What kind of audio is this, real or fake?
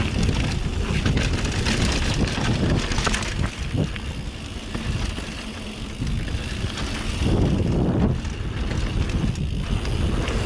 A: real